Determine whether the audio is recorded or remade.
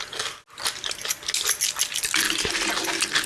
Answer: recorded